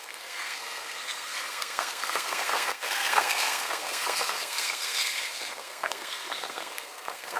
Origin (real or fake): fake